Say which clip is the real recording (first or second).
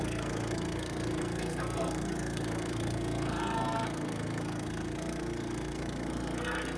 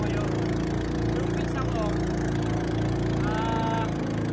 second